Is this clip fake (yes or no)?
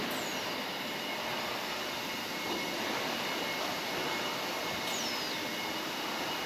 no